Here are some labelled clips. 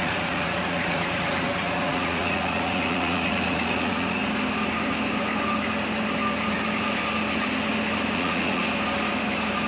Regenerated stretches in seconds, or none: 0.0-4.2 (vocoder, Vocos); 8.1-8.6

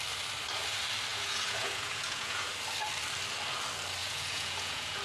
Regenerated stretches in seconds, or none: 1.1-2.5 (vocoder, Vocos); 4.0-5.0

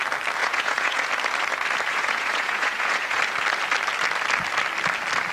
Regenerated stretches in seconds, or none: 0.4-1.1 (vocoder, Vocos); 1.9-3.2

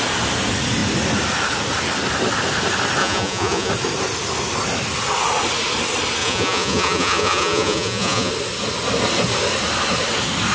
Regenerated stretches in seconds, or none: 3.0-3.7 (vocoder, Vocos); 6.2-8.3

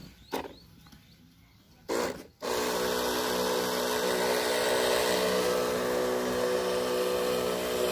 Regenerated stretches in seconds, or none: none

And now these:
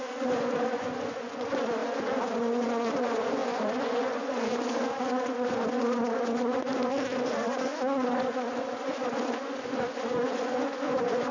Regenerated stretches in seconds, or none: 0.0-6.7 (vocoder, Vocos); 7.3-11.3